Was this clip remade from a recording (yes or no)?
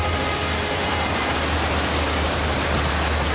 no